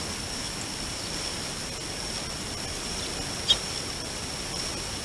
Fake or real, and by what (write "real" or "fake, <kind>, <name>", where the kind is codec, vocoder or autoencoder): real